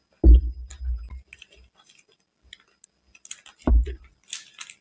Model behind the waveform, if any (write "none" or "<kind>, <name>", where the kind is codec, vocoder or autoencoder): none